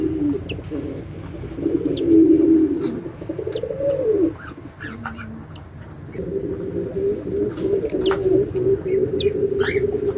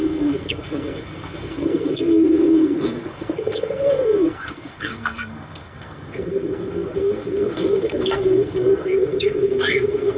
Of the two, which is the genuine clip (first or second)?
first